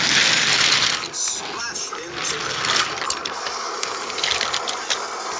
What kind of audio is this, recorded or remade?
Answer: recorded